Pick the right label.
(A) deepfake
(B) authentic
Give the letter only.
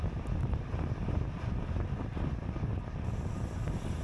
B